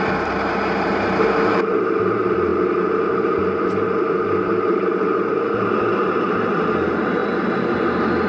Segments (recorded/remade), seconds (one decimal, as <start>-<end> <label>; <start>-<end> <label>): 0.0-7.2 remade; 7.2-8.3 recorded